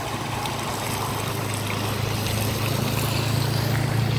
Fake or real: real